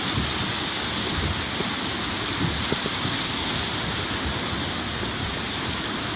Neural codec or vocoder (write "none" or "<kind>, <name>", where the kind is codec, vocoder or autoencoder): none